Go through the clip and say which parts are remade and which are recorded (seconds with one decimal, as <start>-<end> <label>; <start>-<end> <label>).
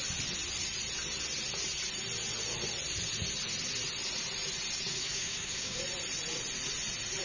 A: 0.0-5.0 recorded; 5.0-5.8 remade; 5.8-7.2 recorded